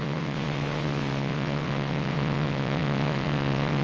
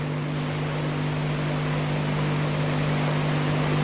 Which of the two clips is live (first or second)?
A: second